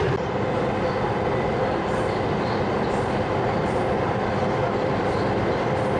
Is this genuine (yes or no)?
yes